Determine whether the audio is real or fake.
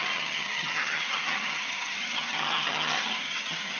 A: fake